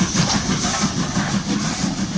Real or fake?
real